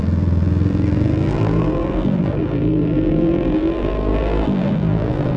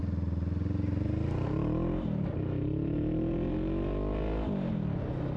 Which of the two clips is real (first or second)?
second